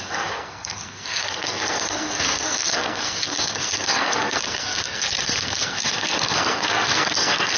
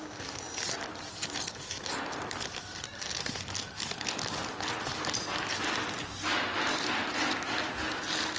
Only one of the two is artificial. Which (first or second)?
first